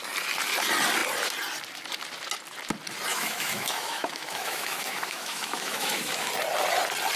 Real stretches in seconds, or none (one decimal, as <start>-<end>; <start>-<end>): 0.0-3.1; 6.3-7.2